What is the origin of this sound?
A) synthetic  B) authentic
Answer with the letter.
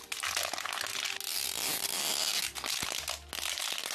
B